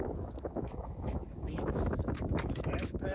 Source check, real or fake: fake